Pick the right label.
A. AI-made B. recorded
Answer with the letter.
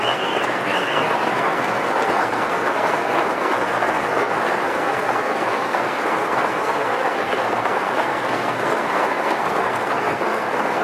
A